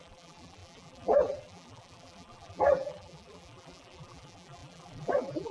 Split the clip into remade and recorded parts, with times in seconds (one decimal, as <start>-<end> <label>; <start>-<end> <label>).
0.0-5.5 remade